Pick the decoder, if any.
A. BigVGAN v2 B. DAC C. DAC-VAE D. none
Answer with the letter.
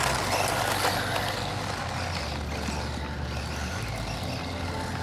D